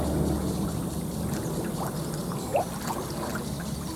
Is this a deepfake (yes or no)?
no